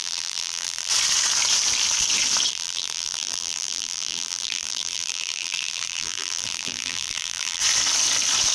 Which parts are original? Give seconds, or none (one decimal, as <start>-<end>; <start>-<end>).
0.9-2.5; 7.6-8.5